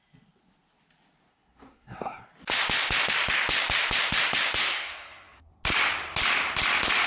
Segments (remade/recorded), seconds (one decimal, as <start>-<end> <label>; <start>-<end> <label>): 0.0-1.3 recorded; 1.3-2.3 remade; 2.3-4.6 recorded; 4.6-5.5 remade; 5.5-7.1 recorded